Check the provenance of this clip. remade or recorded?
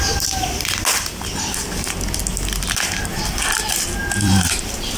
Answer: recorded